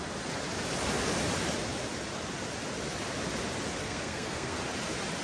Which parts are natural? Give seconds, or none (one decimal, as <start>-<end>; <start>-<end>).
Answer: 0.0-3.8; 4.6-5.2